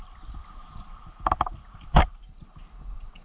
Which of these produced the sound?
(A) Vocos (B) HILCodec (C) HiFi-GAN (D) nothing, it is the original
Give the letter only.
D